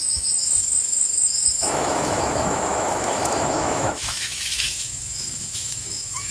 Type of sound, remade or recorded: remade